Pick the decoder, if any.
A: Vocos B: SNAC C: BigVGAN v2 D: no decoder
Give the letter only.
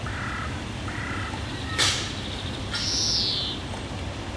D